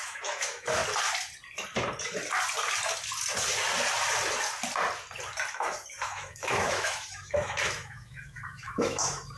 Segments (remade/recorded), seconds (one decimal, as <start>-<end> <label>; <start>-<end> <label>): 0.0-0.8 remade; 0.8-5.5 recorded; 5.5-9.4 remade